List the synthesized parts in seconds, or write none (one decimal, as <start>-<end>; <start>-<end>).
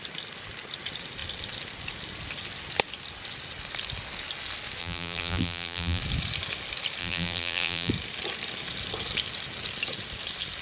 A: 4.8-6.0; 7.0-7.9